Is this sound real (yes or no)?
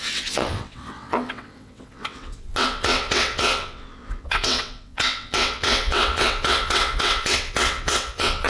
no